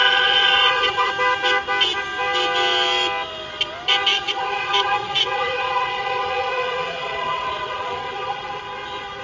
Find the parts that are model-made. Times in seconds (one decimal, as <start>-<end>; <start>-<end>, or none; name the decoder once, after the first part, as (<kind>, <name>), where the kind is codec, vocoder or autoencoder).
0.0-1.1 (vocoder, Vocos); 4.1-8.6